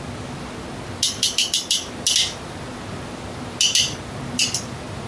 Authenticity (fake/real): real